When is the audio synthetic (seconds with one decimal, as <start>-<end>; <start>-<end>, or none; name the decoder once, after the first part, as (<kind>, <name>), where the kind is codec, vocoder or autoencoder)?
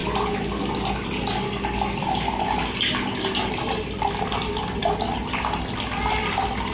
none